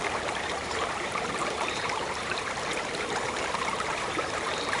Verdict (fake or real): fake